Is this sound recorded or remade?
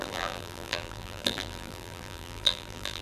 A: remade